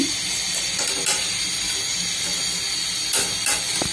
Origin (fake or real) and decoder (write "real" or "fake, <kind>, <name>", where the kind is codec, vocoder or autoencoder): real